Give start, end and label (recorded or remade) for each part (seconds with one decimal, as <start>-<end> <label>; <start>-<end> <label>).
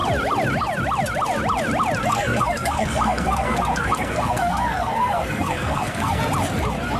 0.0-2.0 recorded; 2.0-6.2 remade; 6.2-7.0 recorded